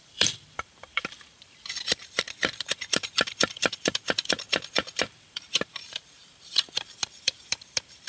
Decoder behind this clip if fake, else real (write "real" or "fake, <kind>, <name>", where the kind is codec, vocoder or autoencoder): fake, vocoder, BigVGAN v2